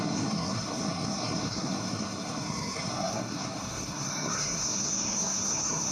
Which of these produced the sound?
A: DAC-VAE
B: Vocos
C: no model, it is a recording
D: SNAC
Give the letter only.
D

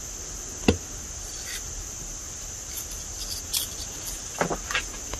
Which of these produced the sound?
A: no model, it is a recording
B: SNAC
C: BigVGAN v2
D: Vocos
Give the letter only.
A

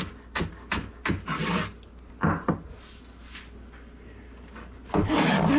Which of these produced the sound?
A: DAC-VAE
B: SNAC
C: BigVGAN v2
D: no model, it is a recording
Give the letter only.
D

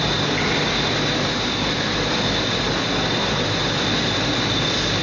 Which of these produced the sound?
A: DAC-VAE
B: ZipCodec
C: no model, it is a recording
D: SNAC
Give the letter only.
C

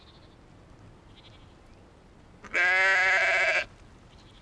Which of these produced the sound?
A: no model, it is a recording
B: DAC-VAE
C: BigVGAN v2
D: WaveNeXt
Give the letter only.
A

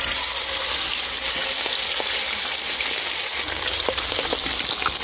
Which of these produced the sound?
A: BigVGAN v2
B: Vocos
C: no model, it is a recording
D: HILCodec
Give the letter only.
C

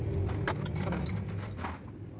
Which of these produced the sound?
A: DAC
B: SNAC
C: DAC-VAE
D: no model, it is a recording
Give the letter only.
D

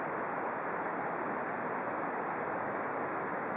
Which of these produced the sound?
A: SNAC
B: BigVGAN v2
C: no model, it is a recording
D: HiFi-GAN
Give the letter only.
C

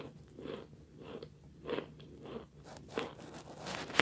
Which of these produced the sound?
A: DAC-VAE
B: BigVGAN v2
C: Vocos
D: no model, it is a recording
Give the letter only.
D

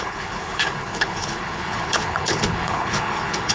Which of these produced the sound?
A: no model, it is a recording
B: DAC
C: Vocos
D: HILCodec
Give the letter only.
D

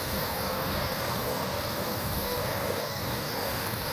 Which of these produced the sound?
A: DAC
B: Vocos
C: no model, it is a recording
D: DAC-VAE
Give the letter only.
A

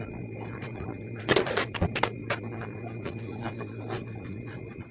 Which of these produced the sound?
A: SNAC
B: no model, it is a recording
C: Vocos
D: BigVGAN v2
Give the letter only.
C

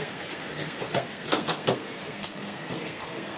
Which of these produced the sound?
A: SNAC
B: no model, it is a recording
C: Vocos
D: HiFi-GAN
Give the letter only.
A